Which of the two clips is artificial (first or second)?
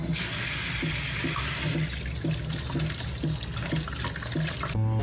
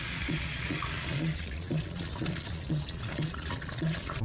second